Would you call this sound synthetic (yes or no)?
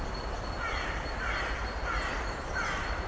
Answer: no